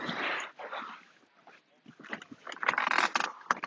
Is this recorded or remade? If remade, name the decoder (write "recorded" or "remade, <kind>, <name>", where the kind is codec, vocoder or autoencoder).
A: recorded